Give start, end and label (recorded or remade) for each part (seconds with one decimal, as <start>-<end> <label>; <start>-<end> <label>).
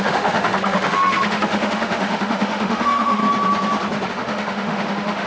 0.0-3.2 remade; 3.2-4.1 recorded; 4.1-5.3 remade